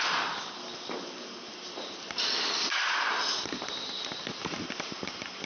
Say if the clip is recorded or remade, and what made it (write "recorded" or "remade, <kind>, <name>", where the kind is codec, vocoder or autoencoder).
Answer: recorded